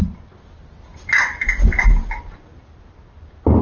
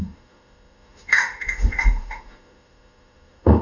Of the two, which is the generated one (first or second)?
second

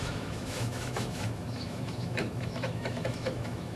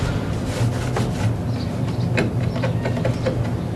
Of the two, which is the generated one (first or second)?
first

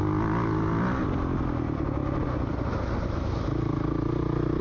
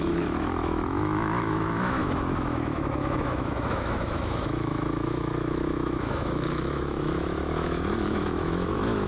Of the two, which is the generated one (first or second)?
second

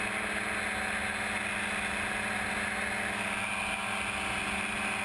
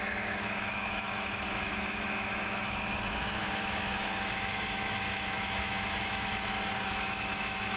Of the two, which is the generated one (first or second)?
second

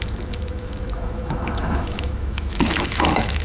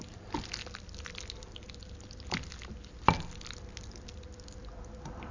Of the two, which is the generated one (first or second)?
first